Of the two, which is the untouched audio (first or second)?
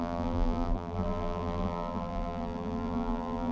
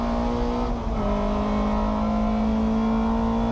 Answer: second